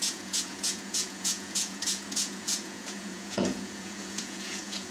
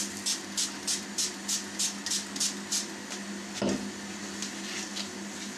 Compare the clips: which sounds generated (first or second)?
first